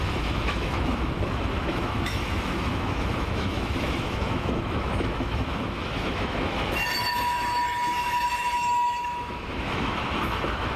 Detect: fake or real fake